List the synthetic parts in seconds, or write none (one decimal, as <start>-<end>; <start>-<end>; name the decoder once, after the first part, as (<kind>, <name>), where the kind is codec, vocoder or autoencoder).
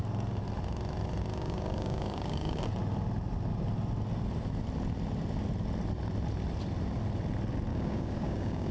1.3-2.6 (codec, DAC); 7.7-8.7